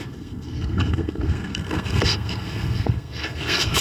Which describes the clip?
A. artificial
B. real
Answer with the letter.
A